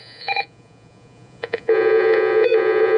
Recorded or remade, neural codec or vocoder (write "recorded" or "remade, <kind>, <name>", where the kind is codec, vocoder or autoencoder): remade, vocoder, Vocos